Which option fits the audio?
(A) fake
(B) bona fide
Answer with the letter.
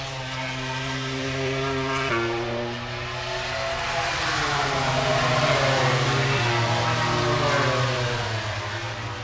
B